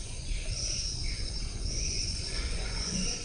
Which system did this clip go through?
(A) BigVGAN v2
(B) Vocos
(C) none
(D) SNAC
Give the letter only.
B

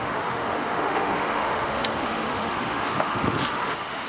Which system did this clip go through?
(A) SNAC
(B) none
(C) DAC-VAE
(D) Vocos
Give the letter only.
C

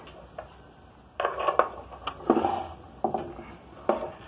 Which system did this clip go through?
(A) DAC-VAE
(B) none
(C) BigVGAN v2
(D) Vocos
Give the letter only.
B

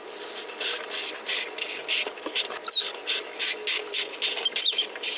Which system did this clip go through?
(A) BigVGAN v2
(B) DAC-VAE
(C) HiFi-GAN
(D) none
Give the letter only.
D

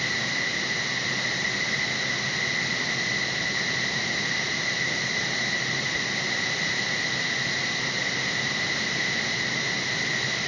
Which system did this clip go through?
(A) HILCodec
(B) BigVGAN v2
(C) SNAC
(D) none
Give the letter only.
D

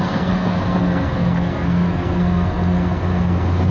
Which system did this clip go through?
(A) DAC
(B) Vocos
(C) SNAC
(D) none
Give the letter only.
C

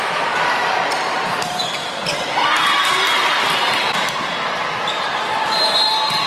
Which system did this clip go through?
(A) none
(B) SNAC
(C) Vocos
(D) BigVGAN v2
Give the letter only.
D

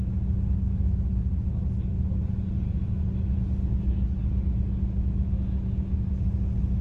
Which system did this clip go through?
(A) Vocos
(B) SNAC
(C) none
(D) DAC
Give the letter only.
C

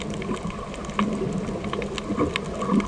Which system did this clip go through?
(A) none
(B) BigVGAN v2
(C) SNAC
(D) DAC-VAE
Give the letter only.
A